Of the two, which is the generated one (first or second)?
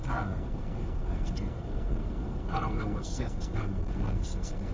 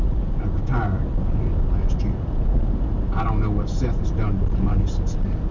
first